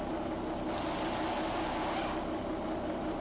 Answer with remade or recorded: recorded